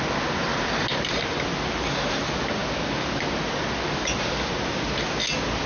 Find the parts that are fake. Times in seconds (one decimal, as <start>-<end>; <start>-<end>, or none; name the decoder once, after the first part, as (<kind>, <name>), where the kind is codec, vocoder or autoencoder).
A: none